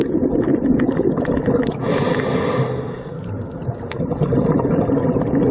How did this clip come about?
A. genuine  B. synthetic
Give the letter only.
A